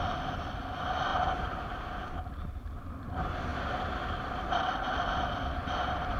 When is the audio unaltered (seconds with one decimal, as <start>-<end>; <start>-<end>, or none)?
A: 0.0-1.1; 3.1-6.2